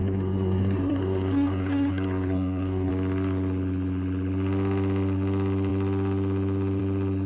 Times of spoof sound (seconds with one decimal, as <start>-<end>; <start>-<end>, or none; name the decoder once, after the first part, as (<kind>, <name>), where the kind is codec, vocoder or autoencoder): 0.0-2.9 (codec, SNAC)